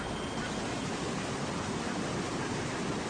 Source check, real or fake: real